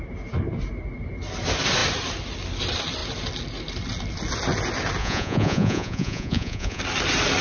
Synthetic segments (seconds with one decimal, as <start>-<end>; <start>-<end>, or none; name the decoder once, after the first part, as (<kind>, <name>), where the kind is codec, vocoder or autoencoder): 5.0-6.8 (vocoder, Vocos)